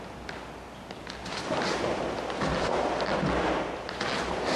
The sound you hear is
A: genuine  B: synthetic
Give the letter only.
A